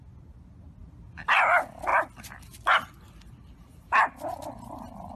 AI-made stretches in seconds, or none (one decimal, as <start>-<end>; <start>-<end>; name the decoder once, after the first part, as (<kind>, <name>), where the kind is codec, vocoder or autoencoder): none